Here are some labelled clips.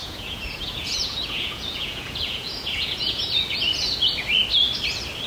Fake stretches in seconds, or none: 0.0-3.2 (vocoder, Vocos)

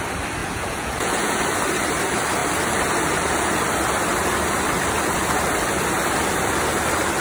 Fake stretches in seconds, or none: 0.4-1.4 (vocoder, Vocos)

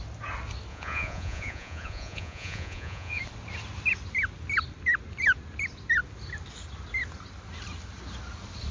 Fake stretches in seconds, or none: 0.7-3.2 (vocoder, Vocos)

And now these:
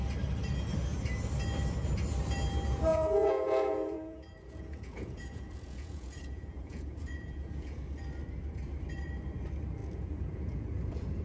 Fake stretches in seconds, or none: 2.9-7.8 (vocoder, Vocos); 9.8-11.2

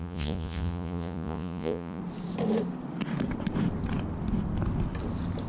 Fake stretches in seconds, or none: 0.0-2.0 (vocoder, Vocos)

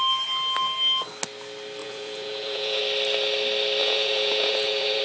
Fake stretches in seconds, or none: 1.8-2.8 (vocoder, Vocos); 3.8-5.0

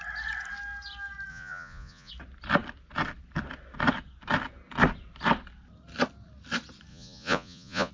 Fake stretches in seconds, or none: 1.3-2.1 (vocoder, Vocos); 6.9-7.9

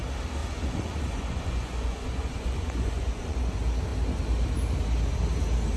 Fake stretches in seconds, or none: 0.4-3.5 (vocoder, Vocos)